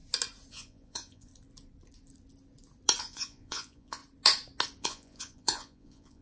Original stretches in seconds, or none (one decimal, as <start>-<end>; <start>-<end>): 0.0-0.5; 1.3-3.0; 4.0-4.8